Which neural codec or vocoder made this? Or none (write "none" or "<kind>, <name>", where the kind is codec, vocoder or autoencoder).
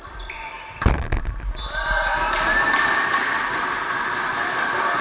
none